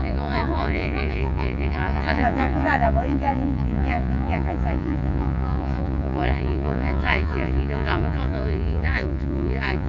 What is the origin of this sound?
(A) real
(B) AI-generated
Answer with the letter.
B